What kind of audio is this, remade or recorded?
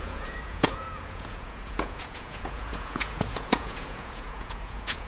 remade